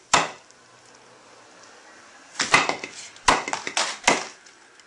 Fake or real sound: real